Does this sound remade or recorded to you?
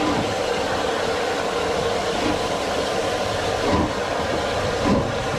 remade